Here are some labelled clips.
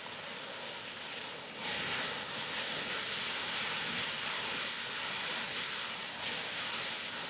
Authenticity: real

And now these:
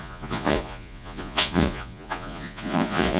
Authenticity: fake